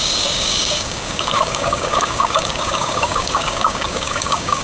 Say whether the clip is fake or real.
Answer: fake